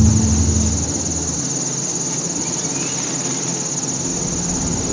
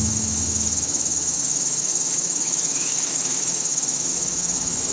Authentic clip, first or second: first